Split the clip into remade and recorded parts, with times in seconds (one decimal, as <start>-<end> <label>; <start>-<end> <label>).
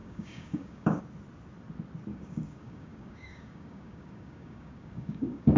0.0-1.0 remade; 1.0-2.1 recorded; 2.1-5.6 remade